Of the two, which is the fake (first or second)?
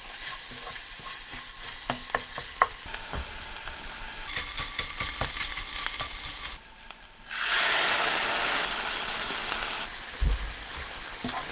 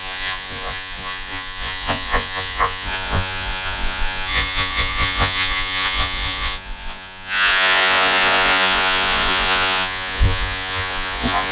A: second